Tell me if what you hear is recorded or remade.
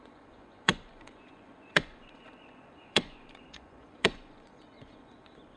remade